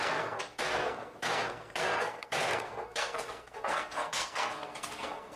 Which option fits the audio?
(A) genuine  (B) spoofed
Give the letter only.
B